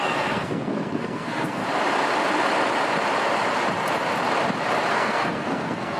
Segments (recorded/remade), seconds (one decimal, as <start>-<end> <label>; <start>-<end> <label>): 0.0-1.6 remade; 1.6-4.9 recorded; 4.9-6.0 remade